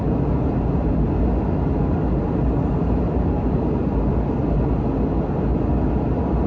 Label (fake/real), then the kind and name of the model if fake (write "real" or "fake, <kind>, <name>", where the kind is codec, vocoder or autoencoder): real